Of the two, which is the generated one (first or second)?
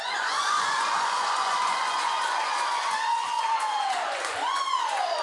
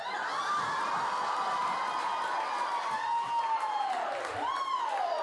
first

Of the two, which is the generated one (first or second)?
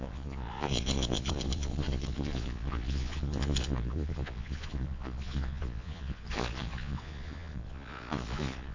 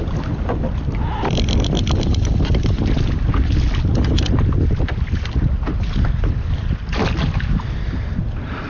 first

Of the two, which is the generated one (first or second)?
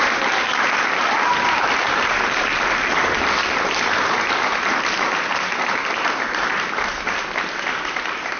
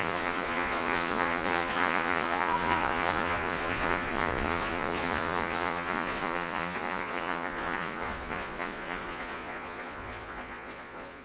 second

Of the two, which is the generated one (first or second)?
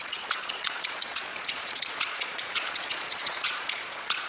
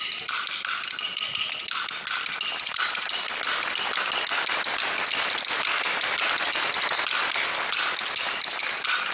first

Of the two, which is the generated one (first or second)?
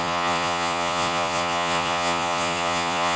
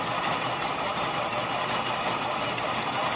first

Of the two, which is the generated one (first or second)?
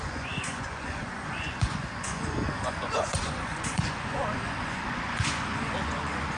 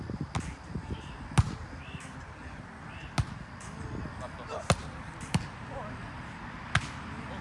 first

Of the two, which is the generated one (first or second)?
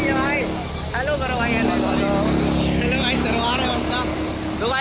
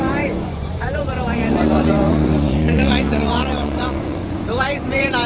second